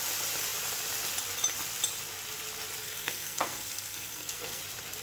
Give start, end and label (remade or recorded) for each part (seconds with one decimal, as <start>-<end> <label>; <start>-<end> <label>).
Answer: 0.0-2.8 recorded; 2.8-4.6 remade; 4.6-5.0 recorded